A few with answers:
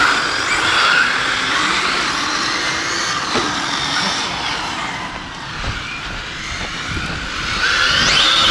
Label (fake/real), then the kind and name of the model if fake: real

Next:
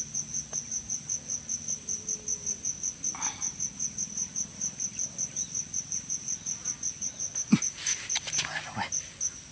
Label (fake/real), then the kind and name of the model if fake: real